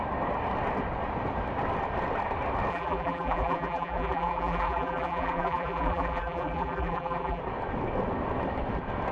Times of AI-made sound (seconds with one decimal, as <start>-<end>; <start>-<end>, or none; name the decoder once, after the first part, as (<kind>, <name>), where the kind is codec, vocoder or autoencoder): 2.7-7.4 (vocoder, BigVGAN v2)